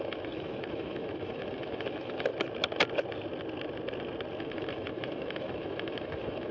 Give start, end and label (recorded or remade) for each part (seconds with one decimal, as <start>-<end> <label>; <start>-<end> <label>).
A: 0.0-2.3 remade; 2.3-4.4 recorded; 4.4-6.5 remade